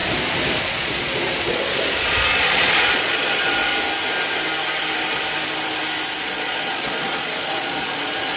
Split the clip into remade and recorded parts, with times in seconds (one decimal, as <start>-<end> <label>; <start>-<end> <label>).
0.0-0.6 recorded; 0.6-3.7 remade; 3.7-6.2 recorded; 6.2-8.4 remade